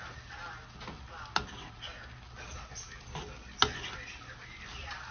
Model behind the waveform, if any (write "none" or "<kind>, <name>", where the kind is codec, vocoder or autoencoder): none